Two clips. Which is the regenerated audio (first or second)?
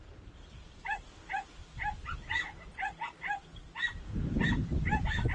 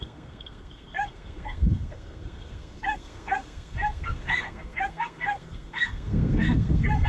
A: second